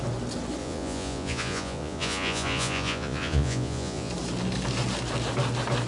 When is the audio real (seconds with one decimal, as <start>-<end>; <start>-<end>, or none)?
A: 0.0-0.6; 4.1-5.9